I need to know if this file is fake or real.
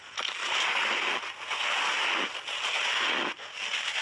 real